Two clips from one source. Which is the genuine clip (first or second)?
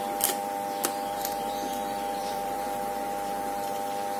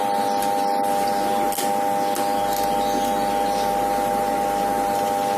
second